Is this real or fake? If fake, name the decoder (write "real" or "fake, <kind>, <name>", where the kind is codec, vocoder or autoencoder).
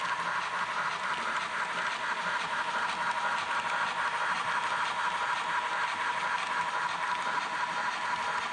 real